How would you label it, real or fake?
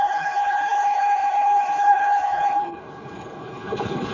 fake